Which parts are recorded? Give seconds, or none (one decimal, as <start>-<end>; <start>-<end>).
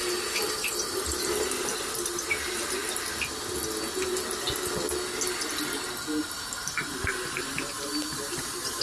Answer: 2.8-6.2